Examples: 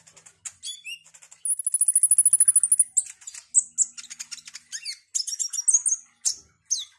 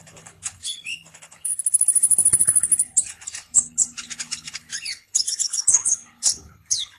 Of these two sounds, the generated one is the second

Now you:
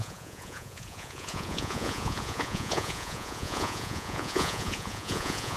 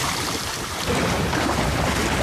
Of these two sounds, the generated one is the first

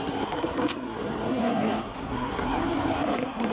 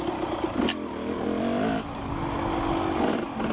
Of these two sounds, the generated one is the first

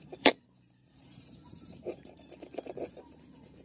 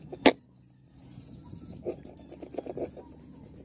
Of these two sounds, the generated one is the first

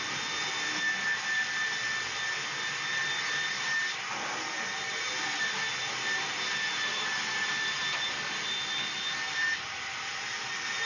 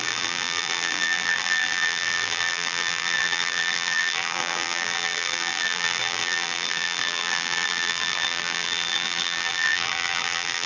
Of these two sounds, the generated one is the second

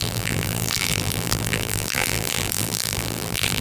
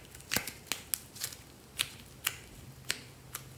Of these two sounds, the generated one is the first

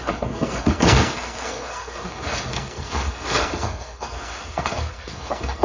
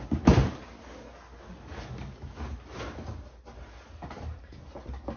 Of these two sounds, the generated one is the first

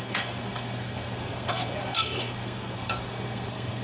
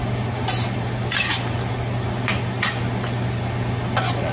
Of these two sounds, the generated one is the first